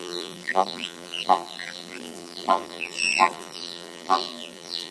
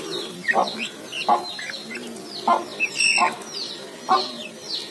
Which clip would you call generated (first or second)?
first